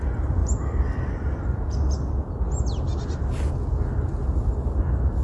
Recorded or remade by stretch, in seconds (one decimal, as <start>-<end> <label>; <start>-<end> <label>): 0.0-5.2 recorded